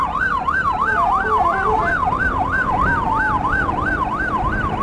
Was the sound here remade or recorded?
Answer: remade